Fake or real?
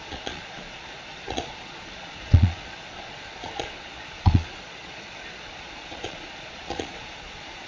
fake